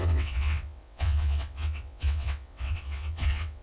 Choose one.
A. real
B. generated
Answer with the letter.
B